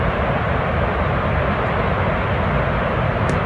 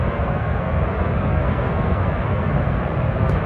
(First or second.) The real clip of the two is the first